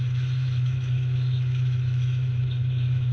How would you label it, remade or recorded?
remade